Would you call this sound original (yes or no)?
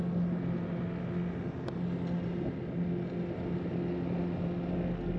yes